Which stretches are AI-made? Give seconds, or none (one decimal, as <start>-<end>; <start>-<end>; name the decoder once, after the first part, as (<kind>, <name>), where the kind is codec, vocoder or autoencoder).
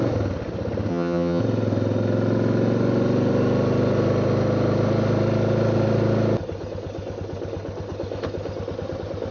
0.9-1.4 (vocoder, HiFi-GAN)